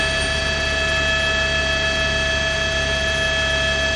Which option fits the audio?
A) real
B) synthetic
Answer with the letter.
A